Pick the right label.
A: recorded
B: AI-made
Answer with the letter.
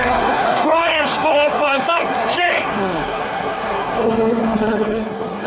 B